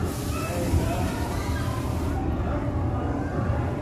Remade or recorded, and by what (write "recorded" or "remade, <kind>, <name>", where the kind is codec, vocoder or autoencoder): recorded